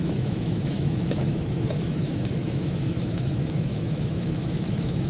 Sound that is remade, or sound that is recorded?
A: remade